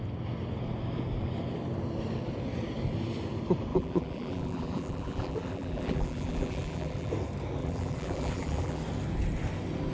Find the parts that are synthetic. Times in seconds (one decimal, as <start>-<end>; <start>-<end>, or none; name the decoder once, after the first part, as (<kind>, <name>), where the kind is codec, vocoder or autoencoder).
3.7-7.1 (vocoder, BigVGAN v2); 7.6-8.8